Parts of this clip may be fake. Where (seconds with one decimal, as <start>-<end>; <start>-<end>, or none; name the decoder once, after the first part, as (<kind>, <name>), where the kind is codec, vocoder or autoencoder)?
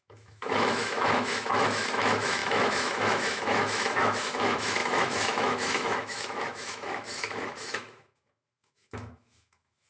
0.0-9.9 (autoencoder, DAC-VAE)